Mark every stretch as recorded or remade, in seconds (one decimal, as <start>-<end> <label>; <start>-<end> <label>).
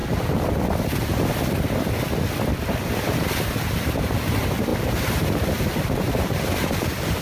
0.0-0.5 remade; 0.5-4.7 recorded; 4.7-7.2 remade